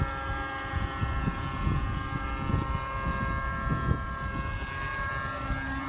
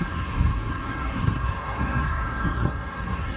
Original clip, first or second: first